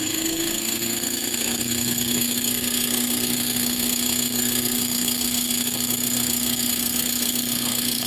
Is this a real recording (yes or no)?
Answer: no